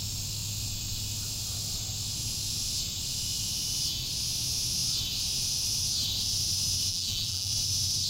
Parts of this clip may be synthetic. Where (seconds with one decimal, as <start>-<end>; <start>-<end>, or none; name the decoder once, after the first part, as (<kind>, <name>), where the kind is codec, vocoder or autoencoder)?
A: 6.9-7.5 (vocoder, BigVGAN v2)